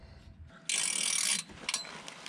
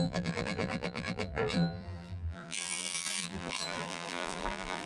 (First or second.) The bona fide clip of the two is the first